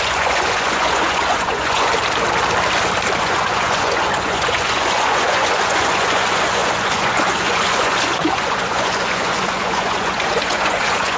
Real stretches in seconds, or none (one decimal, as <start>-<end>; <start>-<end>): 1.9-3.2

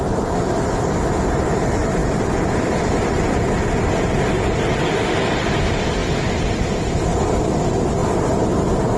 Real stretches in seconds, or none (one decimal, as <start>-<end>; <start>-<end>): 0.0-9.0